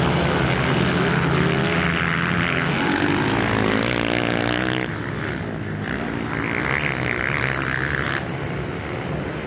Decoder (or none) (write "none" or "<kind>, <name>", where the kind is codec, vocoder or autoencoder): none